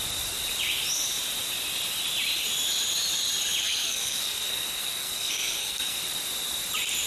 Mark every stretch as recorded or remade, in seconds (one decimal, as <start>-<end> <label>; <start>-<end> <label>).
0.0-3.6 recorded; 3.6-6.0 remade; 6.0-7.1 recorded